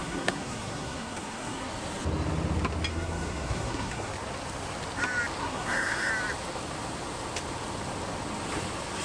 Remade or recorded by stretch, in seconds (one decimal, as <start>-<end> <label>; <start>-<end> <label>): 0.0-1.7 remade; 1.7-2.9 recorded; 2.9-4.1 remade; 4.1-5.4 recorded; 5.4-6.1 remade; 6.1-9.0 recorded